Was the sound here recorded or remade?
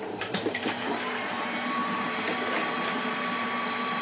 remade